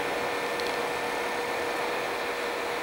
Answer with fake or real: real